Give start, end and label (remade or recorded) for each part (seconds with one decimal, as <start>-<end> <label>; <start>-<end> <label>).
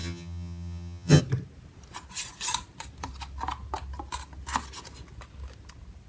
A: 0.0-1.2 remade; 1.2-6.1 recorded